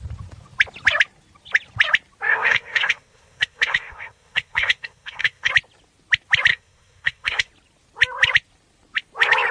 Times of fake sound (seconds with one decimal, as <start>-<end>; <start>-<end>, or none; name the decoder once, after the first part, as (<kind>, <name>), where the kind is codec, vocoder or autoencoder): 2.3-5.5 (codec, SNAC); 6.5-7.5